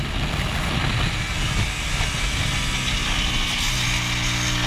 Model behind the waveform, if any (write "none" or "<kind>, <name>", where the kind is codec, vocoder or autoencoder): none